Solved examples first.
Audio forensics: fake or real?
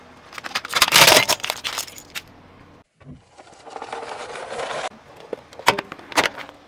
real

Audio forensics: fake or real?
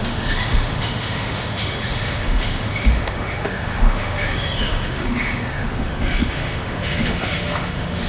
fake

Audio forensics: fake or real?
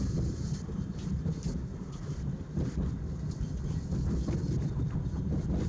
real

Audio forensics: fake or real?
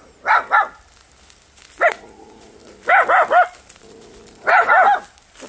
real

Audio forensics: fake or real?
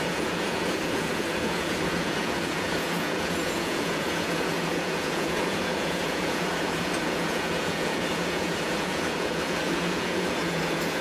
fake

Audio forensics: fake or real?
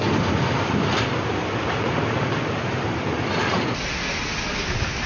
real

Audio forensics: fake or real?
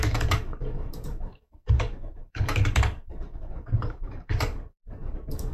fake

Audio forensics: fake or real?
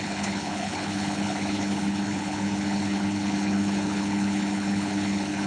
fake